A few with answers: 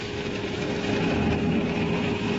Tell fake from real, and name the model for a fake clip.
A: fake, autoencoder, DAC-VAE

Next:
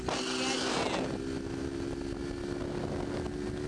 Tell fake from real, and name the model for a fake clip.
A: real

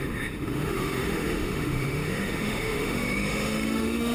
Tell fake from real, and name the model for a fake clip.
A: fake, autoencoder, DAC-VAE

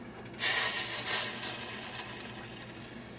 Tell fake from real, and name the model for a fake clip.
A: real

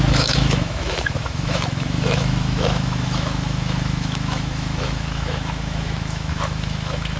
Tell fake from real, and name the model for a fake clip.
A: fake, autoencoder, DAC-VAE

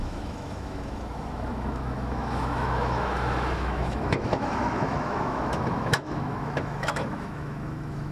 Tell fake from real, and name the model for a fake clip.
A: fake, autoencoder, DAC-VAE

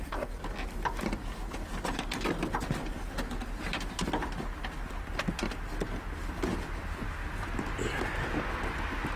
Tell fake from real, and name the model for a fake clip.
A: real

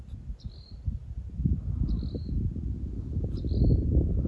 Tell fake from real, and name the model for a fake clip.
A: real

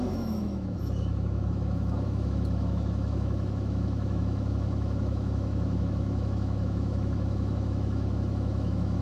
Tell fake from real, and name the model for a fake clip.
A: fake, autoencoder, DAC-VAE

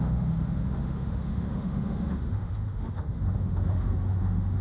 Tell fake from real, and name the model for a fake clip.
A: fake, autoencoder, DAC-VAE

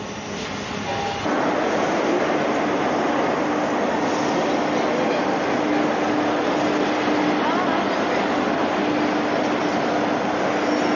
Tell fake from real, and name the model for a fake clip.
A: real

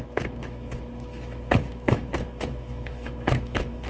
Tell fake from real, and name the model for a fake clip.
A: fake, autoencoder, DAC-VAE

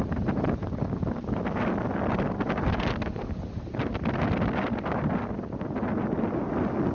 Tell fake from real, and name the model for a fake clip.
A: real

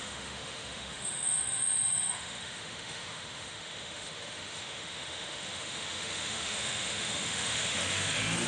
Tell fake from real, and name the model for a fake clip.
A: fake, autoencoder, DAC-VAE